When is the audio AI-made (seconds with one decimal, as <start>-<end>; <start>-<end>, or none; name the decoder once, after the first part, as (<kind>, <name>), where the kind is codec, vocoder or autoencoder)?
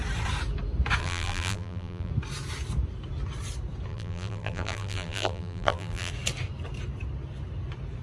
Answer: 1.0-2.1 (vocoder, BigVGAN v2); 3.9-6.1